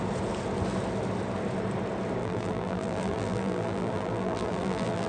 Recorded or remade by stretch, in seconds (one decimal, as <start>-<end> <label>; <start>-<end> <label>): 0.0-2.2 recorded; 2.2-5.1 remade